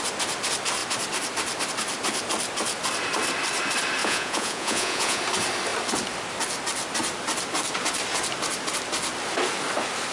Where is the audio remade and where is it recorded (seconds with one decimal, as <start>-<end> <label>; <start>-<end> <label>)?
0.0-4.0 recorded; 4.0-5.2 remade; 5.2-10.1 recorded